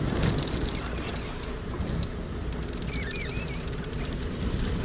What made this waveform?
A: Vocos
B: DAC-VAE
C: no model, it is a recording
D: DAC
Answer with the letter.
C